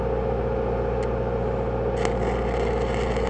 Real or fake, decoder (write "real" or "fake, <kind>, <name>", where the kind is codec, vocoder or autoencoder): real